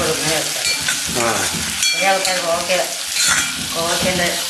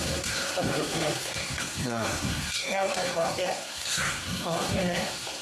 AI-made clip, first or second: second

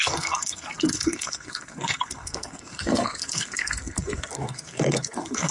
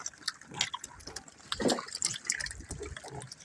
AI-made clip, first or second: first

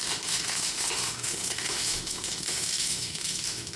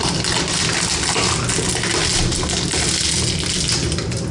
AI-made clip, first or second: first